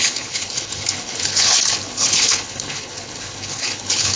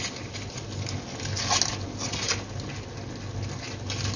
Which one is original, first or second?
second